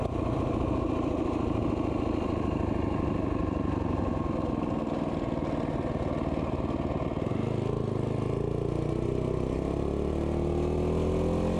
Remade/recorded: recorded